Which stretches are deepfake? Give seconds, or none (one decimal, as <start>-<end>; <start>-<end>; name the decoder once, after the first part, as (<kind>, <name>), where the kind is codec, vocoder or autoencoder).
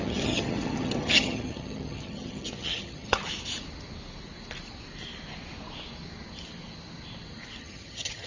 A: 0.0-3.2 (vocoder, HiFi-GAN); 7.6-8.3